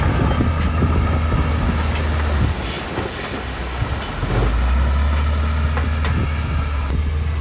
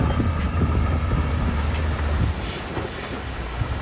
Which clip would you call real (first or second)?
first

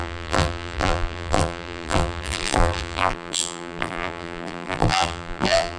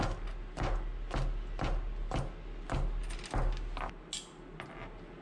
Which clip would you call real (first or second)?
second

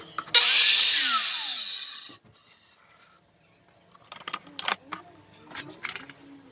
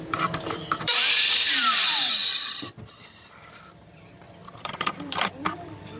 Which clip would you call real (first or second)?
first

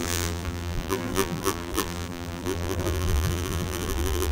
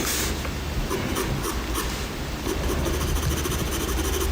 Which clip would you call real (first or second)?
second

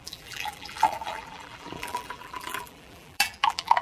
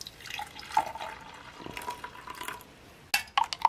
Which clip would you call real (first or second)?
second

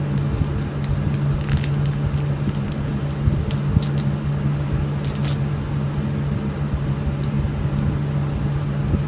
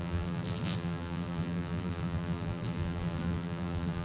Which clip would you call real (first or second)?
first